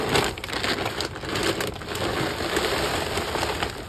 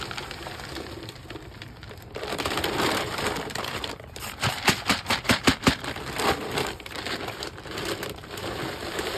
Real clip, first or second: first